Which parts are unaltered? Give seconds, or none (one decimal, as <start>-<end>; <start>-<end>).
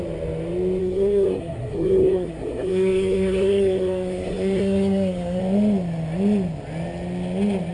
0.0-0.8; 5.4-7.7